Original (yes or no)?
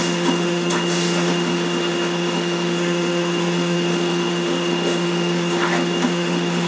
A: no